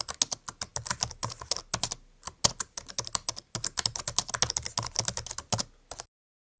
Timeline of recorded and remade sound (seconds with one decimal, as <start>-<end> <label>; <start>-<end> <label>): 0.0-6.6 recorded